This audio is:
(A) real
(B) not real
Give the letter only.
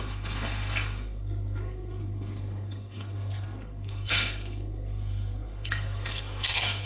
B